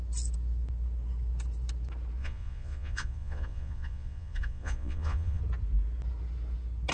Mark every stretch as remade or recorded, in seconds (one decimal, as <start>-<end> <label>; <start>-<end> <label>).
0.0-2.2 recorded; 2.2-5.4 remade; 5.4-6.9 recorded